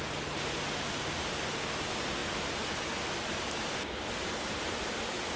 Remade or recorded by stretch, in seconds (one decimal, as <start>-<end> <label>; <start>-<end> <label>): 0.0-5.4 recorded